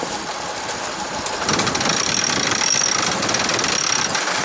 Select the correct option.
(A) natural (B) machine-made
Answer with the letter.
A